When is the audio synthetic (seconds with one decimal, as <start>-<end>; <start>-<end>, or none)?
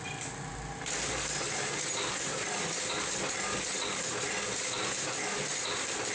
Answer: none